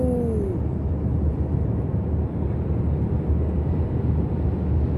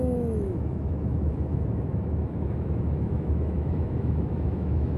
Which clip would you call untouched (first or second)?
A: first